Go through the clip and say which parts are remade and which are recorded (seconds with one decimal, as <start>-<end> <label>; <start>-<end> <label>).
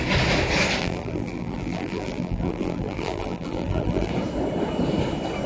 0.0-0.8 recorded; 0.8-4.1 remade; 4.1-5.5 recorded